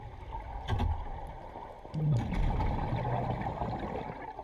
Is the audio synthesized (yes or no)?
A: no